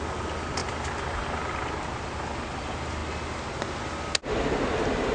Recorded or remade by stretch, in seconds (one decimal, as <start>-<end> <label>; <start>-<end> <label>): 0.0-5.1 recorded